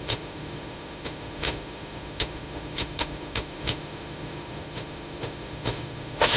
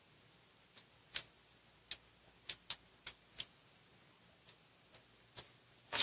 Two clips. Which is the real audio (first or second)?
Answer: second